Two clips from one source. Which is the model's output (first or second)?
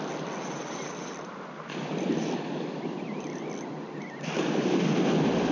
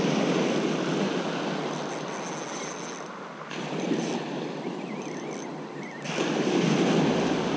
first